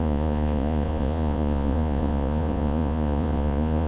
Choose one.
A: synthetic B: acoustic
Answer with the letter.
A